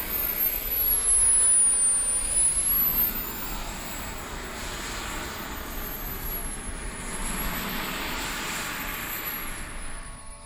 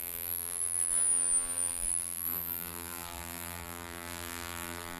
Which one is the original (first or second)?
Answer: first